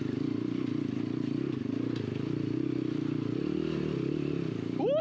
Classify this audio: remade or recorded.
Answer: recorded